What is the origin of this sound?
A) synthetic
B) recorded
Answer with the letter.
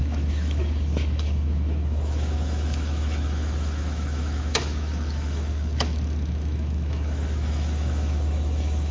A